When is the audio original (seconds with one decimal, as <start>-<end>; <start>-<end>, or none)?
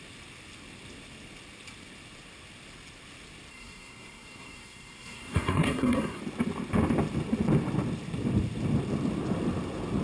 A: 0.0-3.5; 6.2-10.0